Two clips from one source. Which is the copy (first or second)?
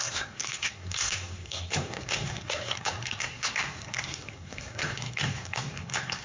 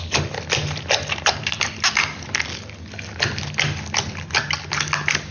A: first